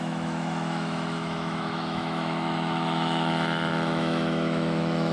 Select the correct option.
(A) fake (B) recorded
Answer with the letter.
A